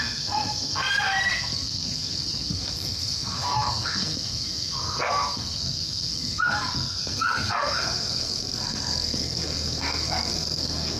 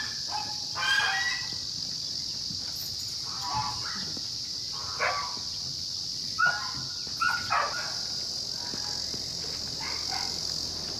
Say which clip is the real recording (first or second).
second